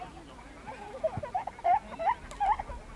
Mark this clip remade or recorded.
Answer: recorded